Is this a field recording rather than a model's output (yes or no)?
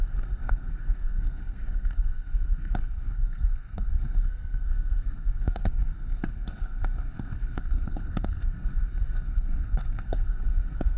no